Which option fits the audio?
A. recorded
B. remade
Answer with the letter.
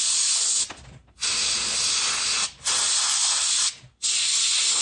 A